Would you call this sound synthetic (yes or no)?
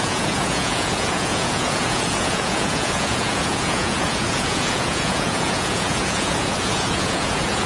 yes